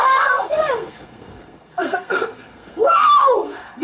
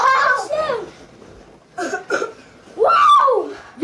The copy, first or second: first